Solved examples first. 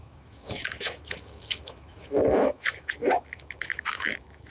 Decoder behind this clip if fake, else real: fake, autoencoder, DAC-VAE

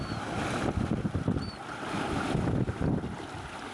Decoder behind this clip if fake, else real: real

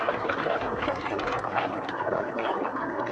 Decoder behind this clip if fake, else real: fake, codec, SNAC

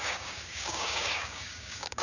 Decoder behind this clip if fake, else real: fake, codec, DAC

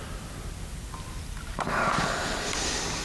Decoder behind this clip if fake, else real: real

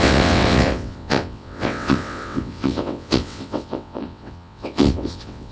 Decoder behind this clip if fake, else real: fake, vocoder, WaveNeXt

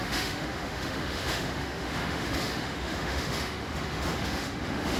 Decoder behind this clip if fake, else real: fake, autoencoder, DAC-VAE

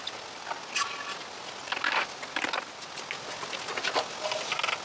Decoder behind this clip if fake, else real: real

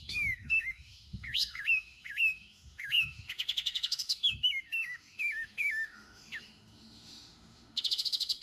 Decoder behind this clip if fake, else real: fake, autoencoder, DAC-VAE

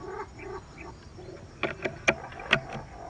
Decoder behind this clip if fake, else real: real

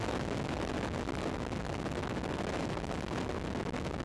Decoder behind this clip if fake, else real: real